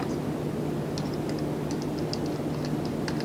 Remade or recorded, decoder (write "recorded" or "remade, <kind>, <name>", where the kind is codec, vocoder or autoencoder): recorded